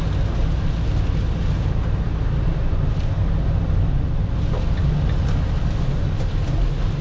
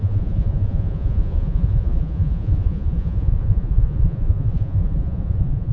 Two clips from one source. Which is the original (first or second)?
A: first